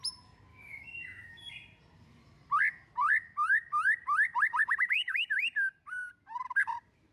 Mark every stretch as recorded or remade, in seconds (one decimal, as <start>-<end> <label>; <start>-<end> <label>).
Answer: 0.0-0.5 recorded; 0.5-1.5 remade; 1.5-4.6 recorded; 4.6-5.3 remade; 5.3-7.1 recorded